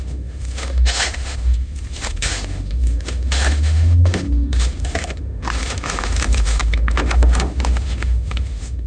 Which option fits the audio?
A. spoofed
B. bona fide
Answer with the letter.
A